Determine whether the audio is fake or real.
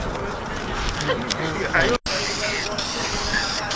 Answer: real